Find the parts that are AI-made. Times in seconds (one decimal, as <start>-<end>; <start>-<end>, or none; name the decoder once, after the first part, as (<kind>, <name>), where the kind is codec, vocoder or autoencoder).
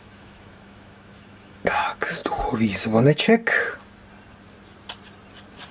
0.0-2.2 (autoencoder, DAC-VAE)